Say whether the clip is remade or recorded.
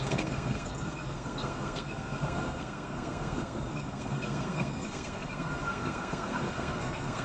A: remade